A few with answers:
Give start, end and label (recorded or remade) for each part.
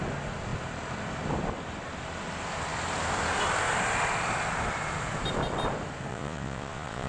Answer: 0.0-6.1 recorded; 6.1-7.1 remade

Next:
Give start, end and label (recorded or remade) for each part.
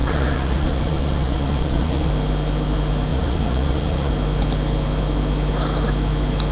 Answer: 0.0-2.1 remade; 2.1-3.1 recorded; 3.1-4.1 remade; 4.1-6.5 recorded